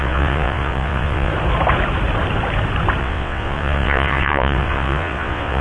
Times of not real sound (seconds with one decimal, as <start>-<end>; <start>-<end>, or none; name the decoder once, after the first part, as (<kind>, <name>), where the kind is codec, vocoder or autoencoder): 0.0-1.3 (vocoder, WaveNeXt); 3.0-5.6